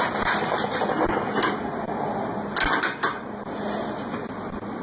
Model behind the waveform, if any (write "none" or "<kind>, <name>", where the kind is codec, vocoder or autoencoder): none